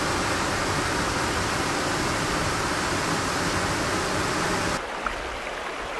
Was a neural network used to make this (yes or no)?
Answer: no